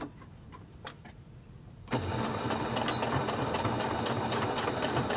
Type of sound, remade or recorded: remade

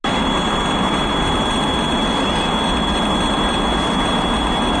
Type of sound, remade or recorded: recorded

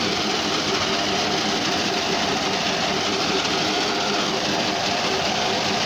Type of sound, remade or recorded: recorded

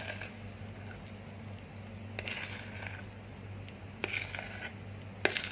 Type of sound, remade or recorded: recorded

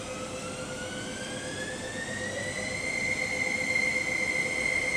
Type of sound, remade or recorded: recorded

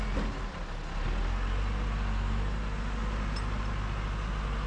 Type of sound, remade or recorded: recorded